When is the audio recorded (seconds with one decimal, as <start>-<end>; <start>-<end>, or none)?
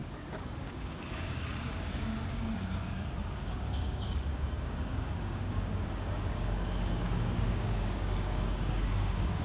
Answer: none